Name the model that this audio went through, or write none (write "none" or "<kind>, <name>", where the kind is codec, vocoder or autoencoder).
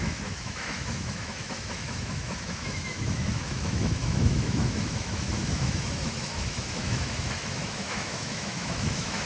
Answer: autoencoder, DAC-VAE